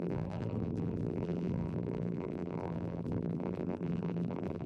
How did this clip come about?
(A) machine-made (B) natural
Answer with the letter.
A